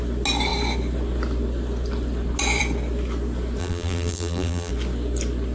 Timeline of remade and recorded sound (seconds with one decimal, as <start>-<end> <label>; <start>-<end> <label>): 0.0-3.6 recorded; 3.6-4.7 remade; 4.7-5.5 recorded